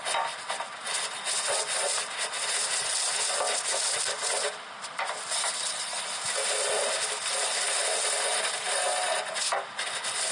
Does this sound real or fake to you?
real